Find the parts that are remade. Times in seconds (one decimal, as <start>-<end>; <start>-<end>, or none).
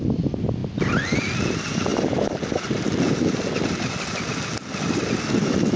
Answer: none